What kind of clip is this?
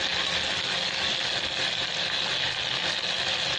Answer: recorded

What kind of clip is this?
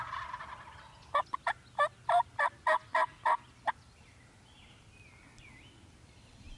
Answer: recorded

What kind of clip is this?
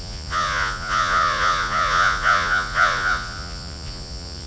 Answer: remade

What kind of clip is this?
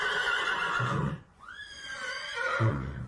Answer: remade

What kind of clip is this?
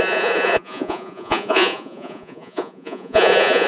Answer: remade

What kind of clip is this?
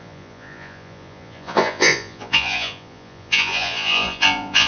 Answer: remade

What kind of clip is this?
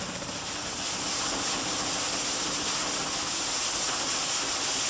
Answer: recorded